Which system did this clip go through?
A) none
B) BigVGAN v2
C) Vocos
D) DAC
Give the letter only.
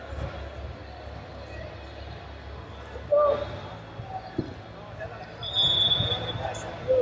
A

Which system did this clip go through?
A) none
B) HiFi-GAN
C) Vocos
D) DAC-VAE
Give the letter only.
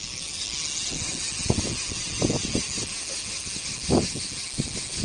A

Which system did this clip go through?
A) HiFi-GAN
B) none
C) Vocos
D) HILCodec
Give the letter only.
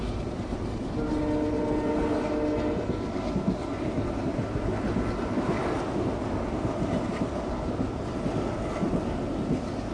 B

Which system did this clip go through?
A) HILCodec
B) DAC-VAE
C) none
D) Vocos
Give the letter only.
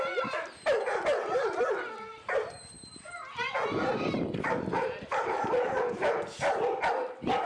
C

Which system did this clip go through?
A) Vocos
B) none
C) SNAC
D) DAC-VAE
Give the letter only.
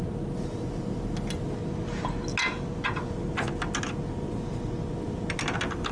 B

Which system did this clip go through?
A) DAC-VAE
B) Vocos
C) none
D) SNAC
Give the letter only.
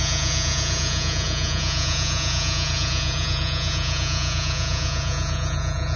B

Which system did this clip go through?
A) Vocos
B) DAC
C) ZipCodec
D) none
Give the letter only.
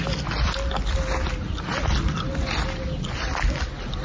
D